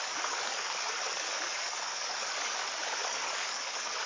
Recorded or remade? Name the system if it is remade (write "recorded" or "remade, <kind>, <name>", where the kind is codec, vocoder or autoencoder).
remade, codec, DAC